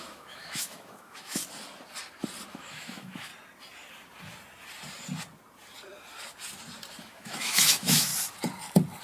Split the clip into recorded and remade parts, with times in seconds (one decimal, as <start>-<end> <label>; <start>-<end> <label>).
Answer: 0.0-1.4 remade; 1.4-2.5 recorded; 2.5-3.3 remade; 3.3-7.0 recorded; 7.0-8.1 remade; 8.1-9.0 recorded